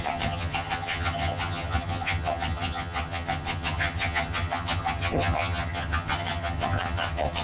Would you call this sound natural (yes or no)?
no